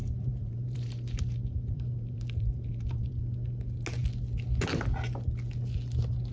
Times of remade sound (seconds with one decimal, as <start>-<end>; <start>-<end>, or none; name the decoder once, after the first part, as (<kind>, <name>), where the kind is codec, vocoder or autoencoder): 0.0-3.1 (vocoder, BigVGAN v2)